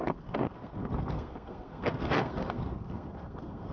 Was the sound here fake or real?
fake